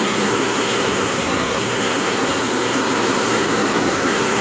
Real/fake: fake